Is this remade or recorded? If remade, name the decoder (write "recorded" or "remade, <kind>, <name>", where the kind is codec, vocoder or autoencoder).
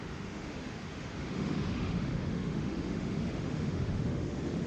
remade, autoencoder, DAC-VAE